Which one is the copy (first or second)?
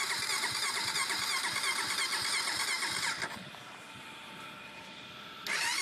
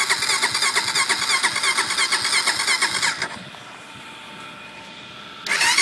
first